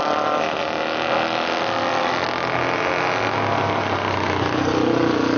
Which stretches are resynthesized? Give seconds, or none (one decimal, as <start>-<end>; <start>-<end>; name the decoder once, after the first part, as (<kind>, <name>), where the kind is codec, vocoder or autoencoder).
none